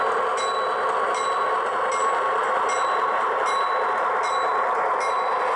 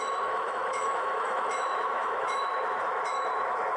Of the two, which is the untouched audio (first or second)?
first